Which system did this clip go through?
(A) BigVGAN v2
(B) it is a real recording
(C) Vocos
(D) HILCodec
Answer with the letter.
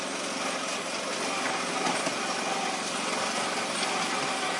B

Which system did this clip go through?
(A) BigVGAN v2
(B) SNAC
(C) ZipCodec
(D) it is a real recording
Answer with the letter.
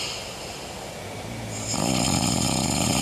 D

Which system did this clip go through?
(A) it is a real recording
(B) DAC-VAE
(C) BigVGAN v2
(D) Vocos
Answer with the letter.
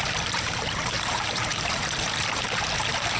C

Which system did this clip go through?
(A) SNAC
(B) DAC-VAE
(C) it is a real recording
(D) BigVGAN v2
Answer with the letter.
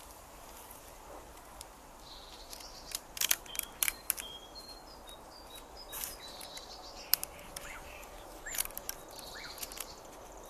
D